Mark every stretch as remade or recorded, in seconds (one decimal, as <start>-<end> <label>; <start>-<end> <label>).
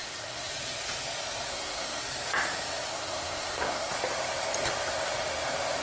0.0-0.5 remade; 0.5-1.5 recorded; 1.5-2.0 remade; 2.0-2.9 recorded; 2.9-3.9 remade; 3.9-5.8 recorded